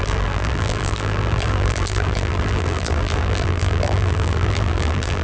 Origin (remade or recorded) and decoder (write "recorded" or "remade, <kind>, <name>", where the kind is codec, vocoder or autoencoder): remade, vocoder, BigVGAN v2